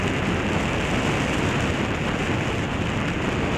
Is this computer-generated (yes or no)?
no